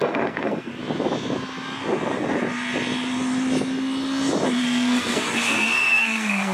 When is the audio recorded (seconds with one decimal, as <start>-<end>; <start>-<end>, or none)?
0.7-4.6